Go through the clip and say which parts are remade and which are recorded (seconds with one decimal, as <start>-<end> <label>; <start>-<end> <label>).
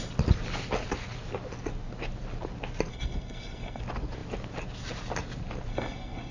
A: 0.0-2.9 recorded; 2.9-3.8 remade; 3.8-5.7 recorded; 5.7-6.3 remade